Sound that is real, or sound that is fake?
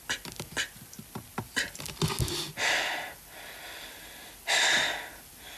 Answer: real